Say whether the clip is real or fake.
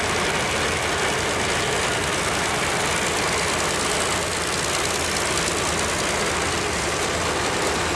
real